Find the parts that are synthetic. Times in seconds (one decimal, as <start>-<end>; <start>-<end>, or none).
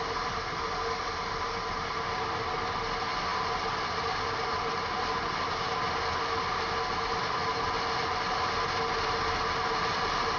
none